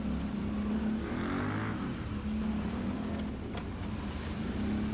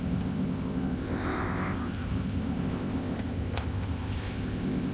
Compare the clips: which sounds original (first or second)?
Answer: first